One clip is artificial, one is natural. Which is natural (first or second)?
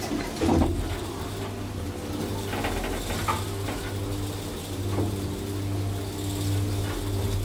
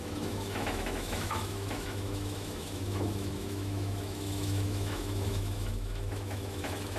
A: first